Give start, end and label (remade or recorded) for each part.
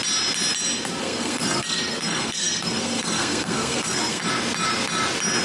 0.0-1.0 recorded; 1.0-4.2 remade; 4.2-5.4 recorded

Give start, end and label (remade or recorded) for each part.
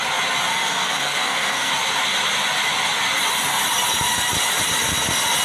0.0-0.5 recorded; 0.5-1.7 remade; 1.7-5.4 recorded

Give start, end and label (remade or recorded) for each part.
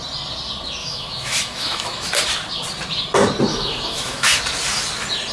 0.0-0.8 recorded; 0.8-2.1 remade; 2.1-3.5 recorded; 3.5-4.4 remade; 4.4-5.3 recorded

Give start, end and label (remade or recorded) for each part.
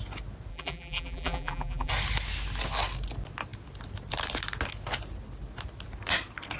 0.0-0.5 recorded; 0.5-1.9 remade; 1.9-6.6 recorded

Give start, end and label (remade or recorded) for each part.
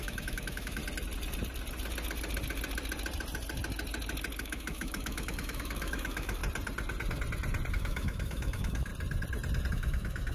0.0-0.8 remade; 0.8-4.4 recorded; 4.4-6.4 remade; 6.4-7.7 recorded; 7.7-8.9 remade; 8.9-9.7 recorded; 9.7-10.3 remade